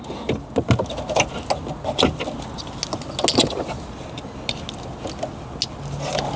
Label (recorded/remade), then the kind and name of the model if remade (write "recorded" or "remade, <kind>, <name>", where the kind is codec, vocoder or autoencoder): recorded